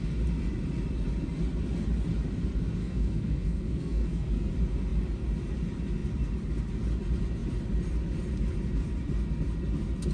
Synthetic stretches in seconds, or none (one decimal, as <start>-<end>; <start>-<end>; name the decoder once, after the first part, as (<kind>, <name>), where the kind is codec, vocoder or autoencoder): 2.8-4.5 (codec, SNAC)